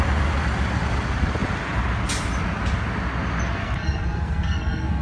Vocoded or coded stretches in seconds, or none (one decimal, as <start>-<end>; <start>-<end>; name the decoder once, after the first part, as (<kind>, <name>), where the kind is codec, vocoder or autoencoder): 3.6-5.0 (codec, SNAC)

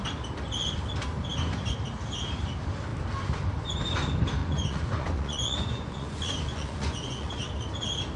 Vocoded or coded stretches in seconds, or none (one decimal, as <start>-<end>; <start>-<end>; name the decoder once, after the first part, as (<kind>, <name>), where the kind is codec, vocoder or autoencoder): 4.4-7.5 (vocoder, Vocos)

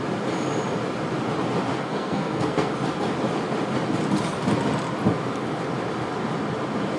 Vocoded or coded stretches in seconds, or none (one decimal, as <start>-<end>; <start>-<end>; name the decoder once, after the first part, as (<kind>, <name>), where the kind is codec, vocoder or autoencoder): 1.7-2.7 (codec, SNAC)

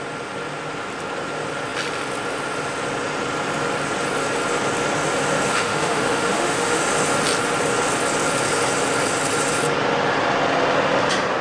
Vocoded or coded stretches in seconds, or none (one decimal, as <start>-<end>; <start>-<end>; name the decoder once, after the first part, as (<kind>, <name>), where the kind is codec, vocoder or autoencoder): 5.5-6.8 (autoencoder, DAC-VAE)

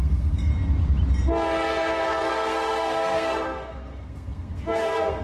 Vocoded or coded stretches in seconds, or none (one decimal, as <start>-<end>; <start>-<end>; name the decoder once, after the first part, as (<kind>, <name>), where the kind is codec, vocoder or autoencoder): 0.0-0.5 (codec, SNAC); 2.3-5.2

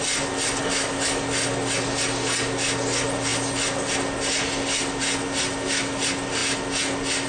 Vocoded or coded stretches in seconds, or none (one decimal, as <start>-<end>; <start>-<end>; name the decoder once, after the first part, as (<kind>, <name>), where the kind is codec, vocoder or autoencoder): none

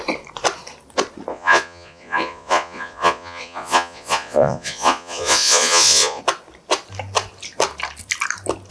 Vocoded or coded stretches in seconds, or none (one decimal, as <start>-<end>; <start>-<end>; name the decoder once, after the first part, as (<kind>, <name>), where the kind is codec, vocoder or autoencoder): 1.3-6.2 (vocoder, Vocos)